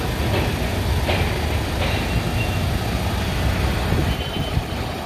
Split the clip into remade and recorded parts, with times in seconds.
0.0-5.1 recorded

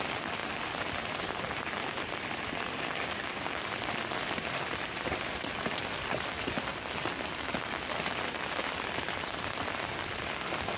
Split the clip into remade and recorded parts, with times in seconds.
0.0-6.7 remade; 6.7-8.7 recorded; 8.7-10.8 remade

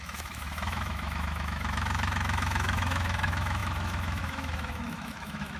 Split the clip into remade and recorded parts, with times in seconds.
0.0-5.6 remade

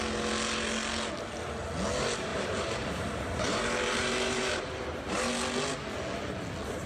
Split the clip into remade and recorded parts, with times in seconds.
0.0-2.3 recorded; 2.3-5.3 remade; 5.3-6.9 recorded

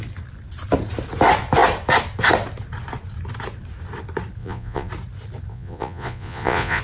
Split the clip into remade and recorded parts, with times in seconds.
0.0-4.4 recorded; 4.4-4.9 remade; 4.9-5.5 recorded; 5.5-6.8 remade

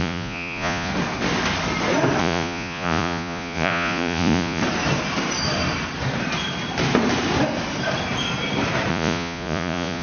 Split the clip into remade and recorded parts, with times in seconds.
0.0-0.9 remade; 0.9-2.2 recorded; 2.2-4.6 remade; 4.6-8.9 recorded; 8.9-10.0 remade

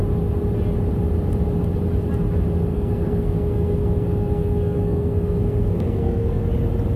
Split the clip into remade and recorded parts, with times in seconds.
0.0-2.7 recorded; 2.7-6.4 remade; 6.4-7.0 recorded